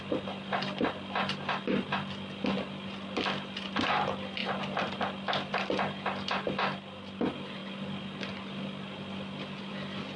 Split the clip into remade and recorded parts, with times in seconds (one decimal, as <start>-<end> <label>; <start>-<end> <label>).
0.0-10.2 recorded